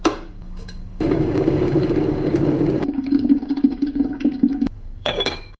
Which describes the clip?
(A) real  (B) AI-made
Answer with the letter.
B